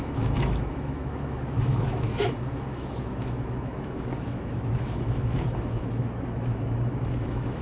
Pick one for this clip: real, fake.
fake